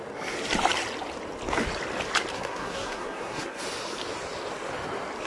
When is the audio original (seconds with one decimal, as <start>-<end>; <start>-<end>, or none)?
0.0-2.3; 3.6-5.3